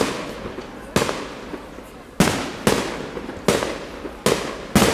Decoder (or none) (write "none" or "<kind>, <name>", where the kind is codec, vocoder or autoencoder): none